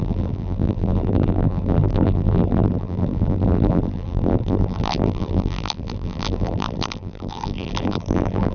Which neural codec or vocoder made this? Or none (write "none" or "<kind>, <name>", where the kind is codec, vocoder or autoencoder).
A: vocoder, BigVGAN v2